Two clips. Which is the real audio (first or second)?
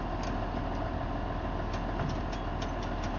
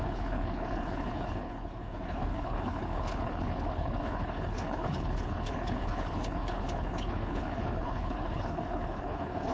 first